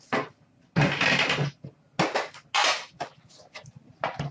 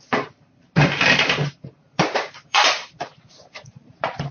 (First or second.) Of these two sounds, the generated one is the second